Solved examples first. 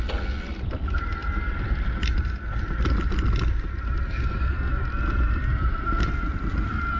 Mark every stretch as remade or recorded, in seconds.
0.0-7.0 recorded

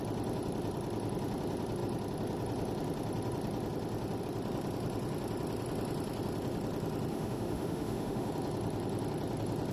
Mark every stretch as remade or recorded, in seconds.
0.0-7.1 recorded; 7.1-8.3 remade; 8.3-9.7 recorded

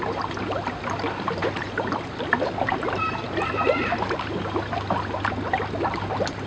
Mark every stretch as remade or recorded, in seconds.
0.0-6.5 recorded

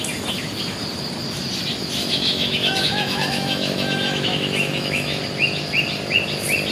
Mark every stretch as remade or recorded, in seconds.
0.0-2.0 recorded; 2.0-5.2 remade; 5.2-6.7 recorded

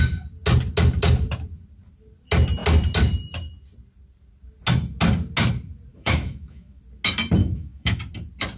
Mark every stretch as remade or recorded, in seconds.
0.0-5.9 recorded; 5.9-6.8 remade; 6.8-7.4 recorded; 7.4-8.0 remade; 8.0-8.6 recorded

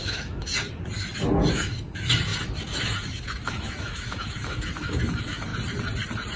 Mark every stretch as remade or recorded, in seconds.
0.0-0.5 remade; 0.5-1.5 recorded; 1.5-5.5 remade; 5.5-6.4 recorded

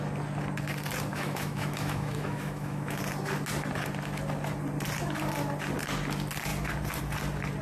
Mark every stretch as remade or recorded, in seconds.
0.0-1.1 recorded; 1.1-3.0 remade; 3.0-7.6 recorded

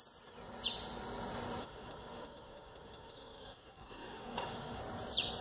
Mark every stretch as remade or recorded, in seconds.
0.0-1.6 recorded; 1.6-4.8 remade; 4.8-5.4 recorded